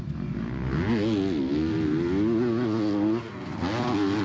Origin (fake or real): real